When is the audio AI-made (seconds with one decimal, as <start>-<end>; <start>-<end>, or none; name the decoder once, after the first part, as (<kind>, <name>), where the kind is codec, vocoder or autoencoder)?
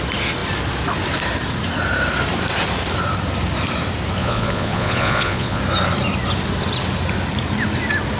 4.2-5.6 (vocoder, Vocos)